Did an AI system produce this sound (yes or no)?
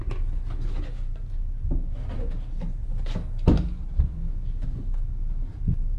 no